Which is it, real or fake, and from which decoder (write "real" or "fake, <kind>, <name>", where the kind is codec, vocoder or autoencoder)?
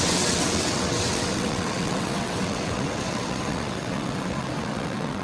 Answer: fake, vocoder, WaveNeXt